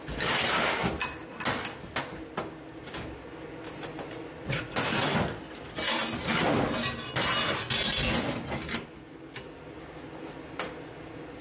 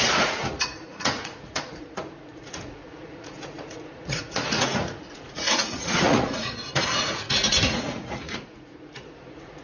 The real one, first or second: first